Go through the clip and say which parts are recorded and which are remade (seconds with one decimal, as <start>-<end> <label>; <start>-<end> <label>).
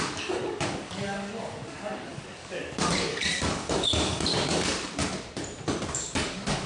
0.0-5.0 remade; 5.0-5.9 recorded; 5.9-6.7 remade